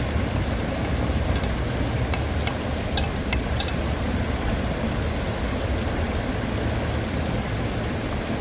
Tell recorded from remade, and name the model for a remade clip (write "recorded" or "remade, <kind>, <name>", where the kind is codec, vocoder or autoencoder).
recorded